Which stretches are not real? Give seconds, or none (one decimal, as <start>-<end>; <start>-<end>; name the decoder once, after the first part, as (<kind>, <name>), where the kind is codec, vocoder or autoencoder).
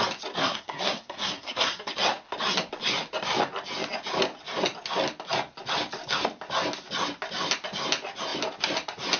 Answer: 0.4-1.9 (codec, SNAC)